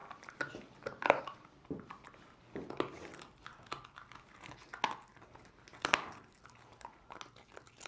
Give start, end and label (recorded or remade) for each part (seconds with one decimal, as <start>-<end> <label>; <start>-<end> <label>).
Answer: 0.0-7.9 recorded